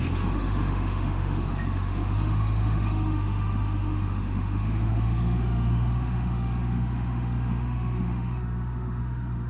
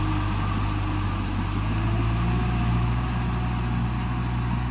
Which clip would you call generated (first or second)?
first